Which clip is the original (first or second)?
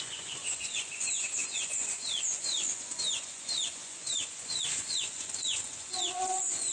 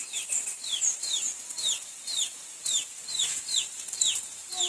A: second